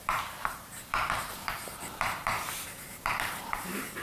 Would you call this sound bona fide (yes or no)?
no